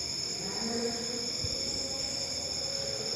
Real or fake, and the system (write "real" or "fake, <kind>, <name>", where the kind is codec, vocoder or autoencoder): real